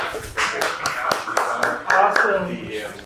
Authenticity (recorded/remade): recorded